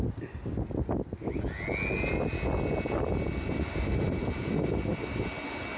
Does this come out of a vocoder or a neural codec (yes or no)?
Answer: no